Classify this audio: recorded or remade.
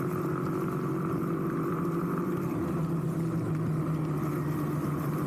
recorded